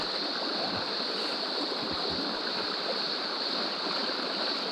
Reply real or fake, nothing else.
real